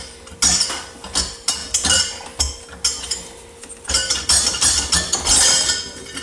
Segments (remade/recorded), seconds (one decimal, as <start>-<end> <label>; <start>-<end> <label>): 0.0-6.2 recorded